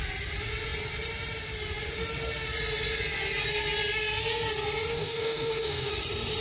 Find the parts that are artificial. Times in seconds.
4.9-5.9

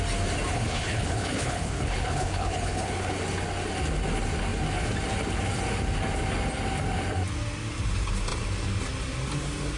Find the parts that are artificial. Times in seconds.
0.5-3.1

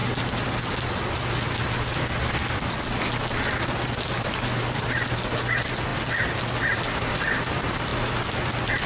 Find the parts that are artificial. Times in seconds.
none

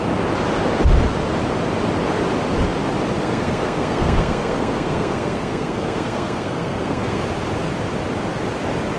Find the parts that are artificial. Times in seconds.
3.2-7.2

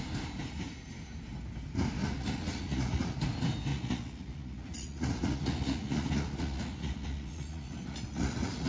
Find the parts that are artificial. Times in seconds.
2.0-3.2; 3.7-8.7